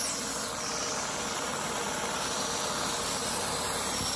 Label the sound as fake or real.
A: real